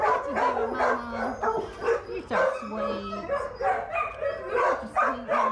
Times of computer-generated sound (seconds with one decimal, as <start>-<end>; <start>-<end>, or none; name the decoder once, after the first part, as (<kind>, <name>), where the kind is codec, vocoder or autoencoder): none